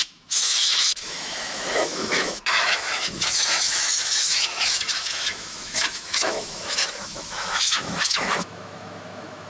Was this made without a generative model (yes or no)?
no